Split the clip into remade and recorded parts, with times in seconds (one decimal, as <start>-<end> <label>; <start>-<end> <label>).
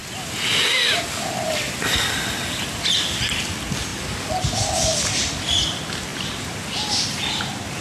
0.0-7.8 recorded